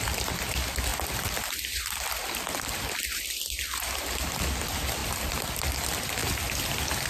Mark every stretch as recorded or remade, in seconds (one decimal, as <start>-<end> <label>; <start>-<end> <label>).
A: 0.0-0.9 recorded; 0.9-4.4 remade; 4.4-5.0 recorded; 5.0-5.5 remade; 5.5-7.1 recorded